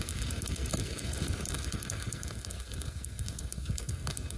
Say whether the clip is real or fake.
fake